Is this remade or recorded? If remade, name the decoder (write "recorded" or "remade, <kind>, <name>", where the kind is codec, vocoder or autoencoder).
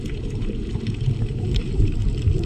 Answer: remade, vocoder, BigVGAN v2